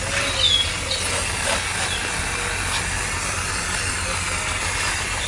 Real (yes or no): yes